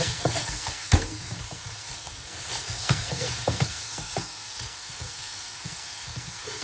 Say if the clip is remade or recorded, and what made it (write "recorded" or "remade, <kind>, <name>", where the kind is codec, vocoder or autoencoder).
remade, codec, SNAC